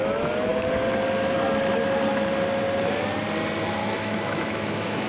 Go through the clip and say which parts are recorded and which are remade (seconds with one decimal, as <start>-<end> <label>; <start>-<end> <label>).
0.0-3.8 recorded; 3.8-5.1 remade